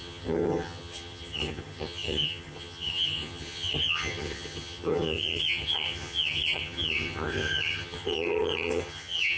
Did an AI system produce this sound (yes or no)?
yes